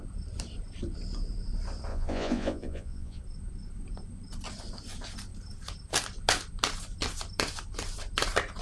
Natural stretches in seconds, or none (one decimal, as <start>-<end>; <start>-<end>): 0.0-1.9; 3.2-8.6

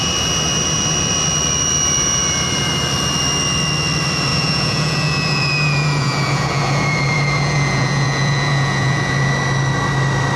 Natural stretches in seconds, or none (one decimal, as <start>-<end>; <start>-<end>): 0.0-4.3; 9.3-10.4

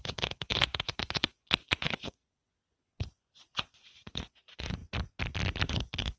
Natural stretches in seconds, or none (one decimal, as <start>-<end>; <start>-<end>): 4.8-5.7

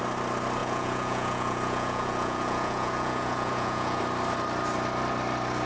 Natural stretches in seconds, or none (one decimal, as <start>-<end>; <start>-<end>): 0.0-0.6; 4.0-5.7